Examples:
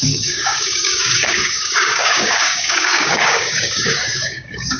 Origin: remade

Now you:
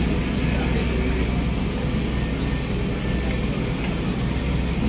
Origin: recorded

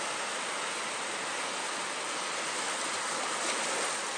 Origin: recorded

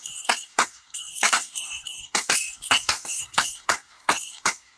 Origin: remade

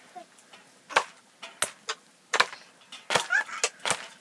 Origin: recorded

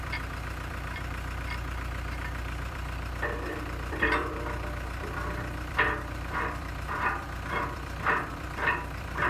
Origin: remade